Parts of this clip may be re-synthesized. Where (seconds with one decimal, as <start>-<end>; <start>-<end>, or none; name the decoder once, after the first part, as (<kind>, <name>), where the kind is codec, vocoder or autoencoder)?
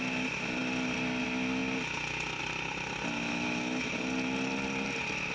none